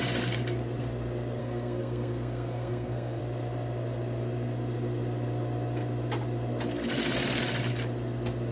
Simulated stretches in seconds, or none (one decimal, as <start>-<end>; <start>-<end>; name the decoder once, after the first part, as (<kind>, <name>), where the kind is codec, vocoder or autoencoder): 1.4-3.2 (codec, SNAC)